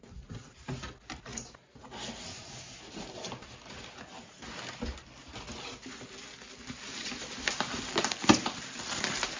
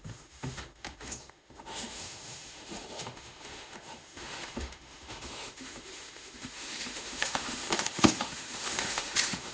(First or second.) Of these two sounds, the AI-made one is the second